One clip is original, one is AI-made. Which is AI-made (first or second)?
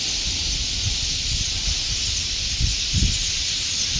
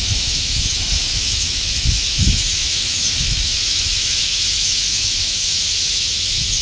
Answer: second